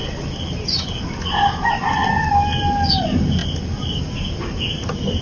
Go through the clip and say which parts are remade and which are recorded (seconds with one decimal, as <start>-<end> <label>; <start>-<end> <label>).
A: 0.0-5.2 recorded